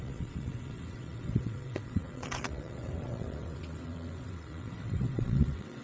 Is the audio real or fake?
fake